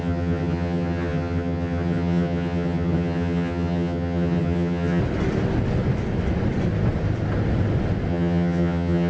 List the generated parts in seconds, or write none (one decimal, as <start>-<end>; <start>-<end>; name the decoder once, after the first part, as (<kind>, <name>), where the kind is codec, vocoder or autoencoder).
0.0-5.0 (vocoder, HiFi-GAN); 8.1-9.1